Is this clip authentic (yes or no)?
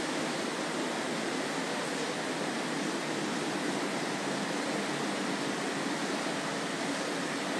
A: yes